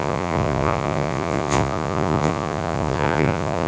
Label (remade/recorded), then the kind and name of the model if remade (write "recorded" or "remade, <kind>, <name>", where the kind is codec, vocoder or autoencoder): remade, vocoder, Vocos